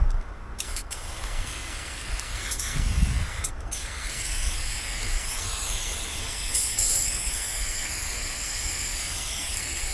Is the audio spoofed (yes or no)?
yes